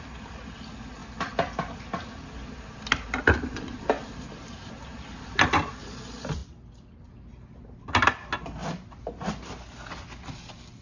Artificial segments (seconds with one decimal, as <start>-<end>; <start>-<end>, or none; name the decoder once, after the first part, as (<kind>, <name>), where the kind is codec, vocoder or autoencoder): none